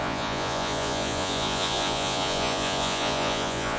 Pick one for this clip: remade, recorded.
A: remade